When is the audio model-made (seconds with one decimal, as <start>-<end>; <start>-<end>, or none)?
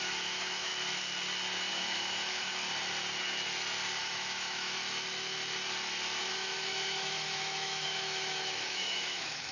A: 0.0-0.7; 1.7-2.5; 4.0-4.8; 6.2-9.5